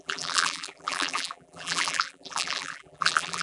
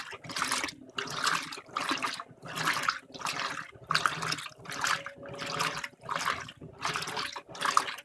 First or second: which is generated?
first